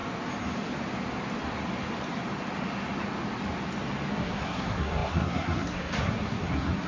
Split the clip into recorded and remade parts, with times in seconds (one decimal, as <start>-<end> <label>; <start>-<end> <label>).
0.0-4.1 recorded; 4.1-6.9 remade

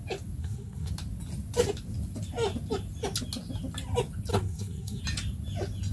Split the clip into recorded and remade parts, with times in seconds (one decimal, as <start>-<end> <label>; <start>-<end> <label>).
0.0-0.4 recorded; 0.4-0.9 remade; 0.9-4.3 recorded; 4.3-5.0 remade; 5.0-5.9 recorded

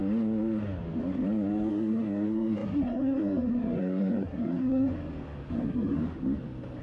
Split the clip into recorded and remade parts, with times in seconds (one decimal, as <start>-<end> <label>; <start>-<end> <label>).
0.0-1.7 recorded; 1.7-4.9 remade; 4.9-5.5 recorded; 5.5-6.0 remade; 6.0-6.8 recorded

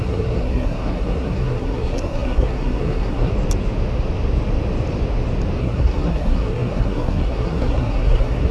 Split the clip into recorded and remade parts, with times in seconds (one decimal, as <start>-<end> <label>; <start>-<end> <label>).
0.0-3.3 remade; 3.3-5.6 recorded; 5.6-8.5 remade

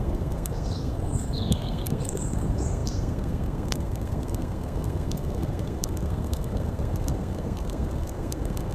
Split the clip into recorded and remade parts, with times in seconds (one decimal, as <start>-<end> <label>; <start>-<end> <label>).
0.0-8.7 remade